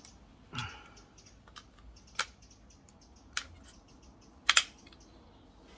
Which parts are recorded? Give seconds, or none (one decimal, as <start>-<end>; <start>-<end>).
0.0-5.8